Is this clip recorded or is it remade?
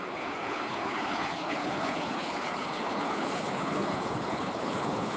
remade